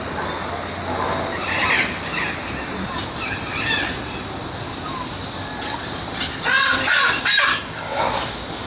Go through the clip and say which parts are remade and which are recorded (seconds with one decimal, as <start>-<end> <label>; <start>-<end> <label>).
0.0-7.5 recorded; 7.5-8.0 remade; 8.0-8.7 recorded